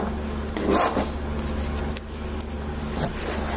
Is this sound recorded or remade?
recorded